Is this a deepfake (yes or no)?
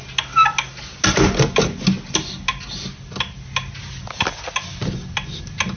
no